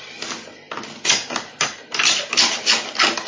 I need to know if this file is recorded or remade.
recorded